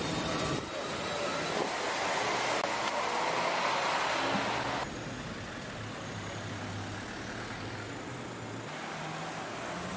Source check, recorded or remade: recorded